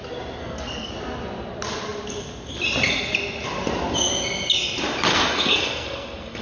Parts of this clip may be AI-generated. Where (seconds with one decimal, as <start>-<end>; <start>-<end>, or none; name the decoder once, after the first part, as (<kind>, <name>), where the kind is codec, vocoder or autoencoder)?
0.4-0.9 (codec, SNAC); 5.1-6.4